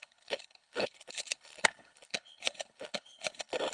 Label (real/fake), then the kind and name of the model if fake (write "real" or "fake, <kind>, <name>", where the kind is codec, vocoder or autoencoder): fake, codec, HILCodec